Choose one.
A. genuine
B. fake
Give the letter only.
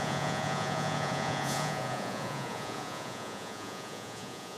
B